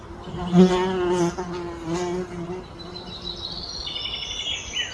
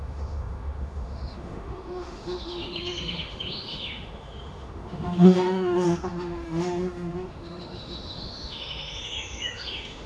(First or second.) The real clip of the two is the first